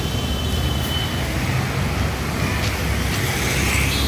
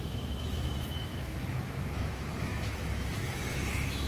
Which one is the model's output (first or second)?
second